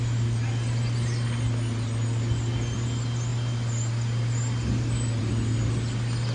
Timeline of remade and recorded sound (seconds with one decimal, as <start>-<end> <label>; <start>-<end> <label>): 0.0-6.3 recorded